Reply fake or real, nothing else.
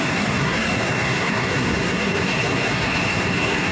fake